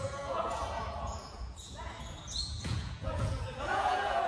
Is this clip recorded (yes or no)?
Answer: no